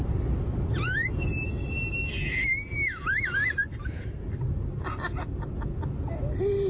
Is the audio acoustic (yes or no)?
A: yes